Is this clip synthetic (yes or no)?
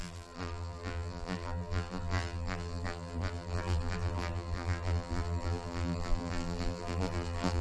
yes